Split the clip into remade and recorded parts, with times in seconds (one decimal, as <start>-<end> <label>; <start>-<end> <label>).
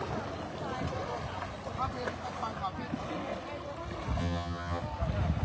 0.0-4.2 recorded; 4.2-4.8 remade; 4.8-5.4 recorded